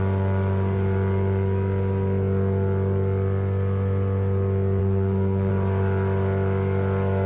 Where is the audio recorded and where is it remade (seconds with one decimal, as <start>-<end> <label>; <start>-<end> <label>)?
0.0-4.8 recorded; 4.8-5.5 remade; 5.5-7.3 recorded